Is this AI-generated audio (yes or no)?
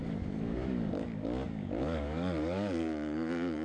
yes